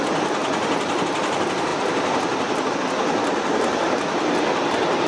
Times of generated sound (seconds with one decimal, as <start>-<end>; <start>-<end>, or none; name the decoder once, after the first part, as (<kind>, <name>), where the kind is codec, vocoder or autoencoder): none